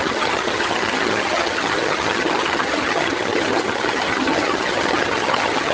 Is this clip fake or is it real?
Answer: fake